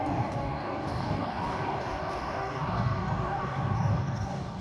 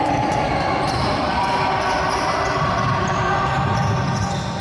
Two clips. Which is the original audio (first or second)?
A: second